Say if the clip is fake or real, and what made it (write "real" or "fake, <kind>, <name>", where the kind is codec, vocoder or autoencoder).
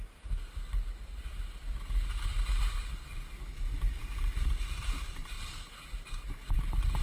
fake, vocoder, BigVGAN v2